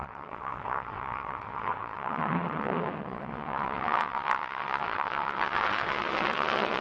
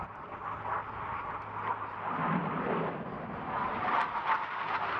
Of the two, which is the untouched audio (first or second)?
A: second